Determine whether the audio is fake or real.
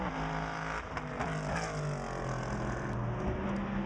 real